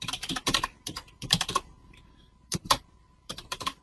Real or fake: fake